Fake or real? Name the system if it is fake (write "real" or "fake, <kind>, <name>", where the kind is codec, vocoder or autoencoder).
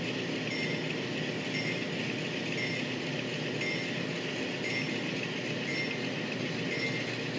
real